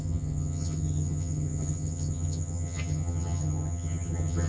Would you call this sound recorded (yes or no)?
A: no